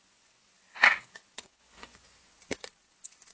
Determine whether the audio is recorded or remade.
remade